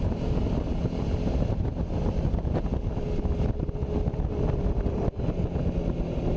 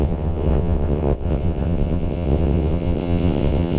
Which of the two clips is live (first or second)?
first